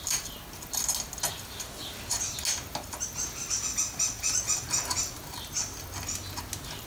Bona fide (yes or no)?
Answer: yes